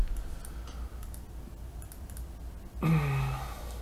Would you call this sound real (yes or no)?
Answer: yes